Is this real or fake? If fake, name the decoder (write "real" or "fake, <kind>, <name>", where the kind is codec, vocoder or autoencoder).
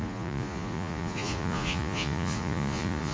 fake, vocoder, Vocos